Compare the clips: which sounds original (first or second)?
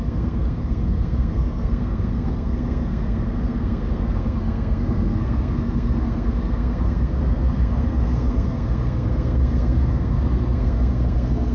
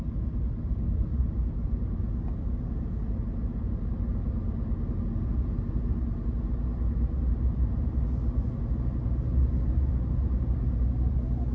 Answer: second